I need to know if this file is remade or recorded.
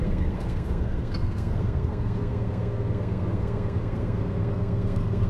remade